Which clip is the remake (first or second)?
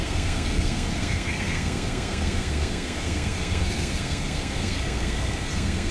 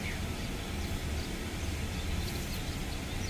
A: first